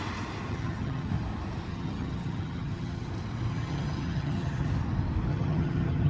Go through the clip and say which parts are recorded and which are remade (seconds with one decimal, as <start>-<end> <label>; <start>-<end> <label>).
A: 0.0-0.5 recorded; 0.5-1.1 remade; 1.1-1.7 recorded; 1.7-3.1 remade; 3.1-3.5 recorded; 3.5-4.7 remade; 4.7-5.3 recorded; 5.3-6.1 remade